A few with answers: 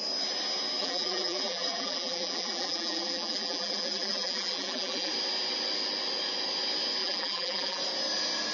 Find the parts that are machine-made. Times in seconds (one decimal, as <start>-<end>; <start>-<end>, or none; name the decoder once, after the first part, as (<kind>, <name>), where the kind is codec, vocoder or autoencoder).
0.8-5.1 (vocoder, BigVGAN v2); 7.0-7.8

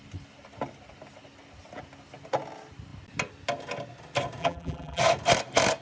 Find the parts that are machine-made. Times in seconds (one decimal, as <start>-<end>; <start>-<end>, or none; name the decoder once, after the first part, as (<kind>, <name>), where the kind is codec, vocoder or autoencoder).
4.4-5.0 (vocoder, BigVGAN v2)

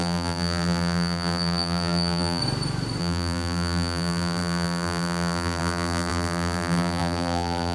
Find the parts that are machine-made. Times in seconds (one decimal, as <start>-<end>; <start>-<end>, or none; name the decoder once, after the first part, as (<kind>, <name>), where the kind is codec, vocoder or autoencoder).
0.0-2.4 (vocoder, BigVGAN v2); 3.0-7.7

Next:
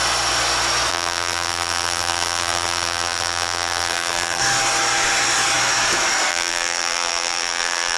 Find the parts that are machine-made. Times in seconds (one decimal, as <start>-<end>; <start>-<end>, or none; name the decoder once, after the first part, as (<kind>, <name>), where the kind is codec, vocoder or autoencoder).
0.9-4.4 (vocoder, BigVGAN v2); 6.3-8.0